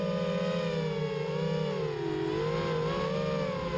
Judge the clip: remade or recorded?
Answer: recorded